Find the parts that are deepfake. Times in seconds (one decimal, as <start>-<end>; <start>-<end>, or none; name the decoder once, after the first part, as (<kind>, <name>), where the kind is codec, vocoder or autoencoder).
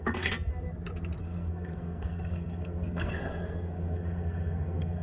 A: 0.0-0.5 (codec, SNAC); 1.2-5.0